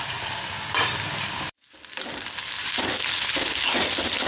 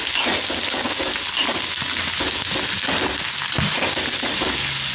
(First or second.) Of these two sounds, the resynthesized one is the first